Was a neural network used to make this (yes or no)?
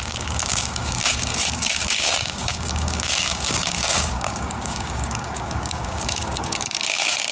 yes